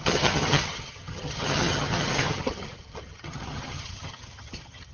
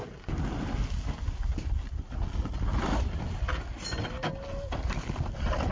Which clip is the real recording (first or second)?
second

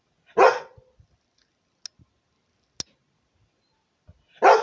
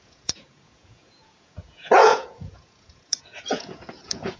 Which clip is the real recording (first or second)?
first